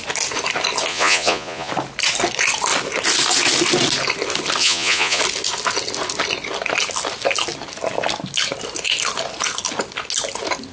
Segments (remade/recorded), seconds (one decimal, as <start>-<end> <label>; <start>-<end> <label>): 0.0-0.9 recorded; 0.9-1.7 remade; 1.7-4.6 recorded; 4.6-5.2 remade; 5.2-10.7 recorded

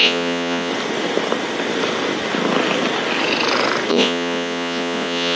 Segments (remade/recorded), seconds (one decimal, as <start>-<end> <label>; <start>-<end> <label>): 0.0-0.7 remade; 0.7-3.9 recorded; 3.9-5.4 remade